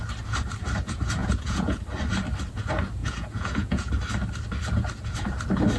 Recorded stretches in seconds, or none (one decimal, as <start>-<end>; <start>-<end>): 0.0-1.2; 1.8-3.0; 3.9-5.8